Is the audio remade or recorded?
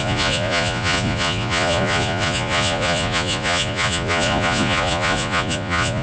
remade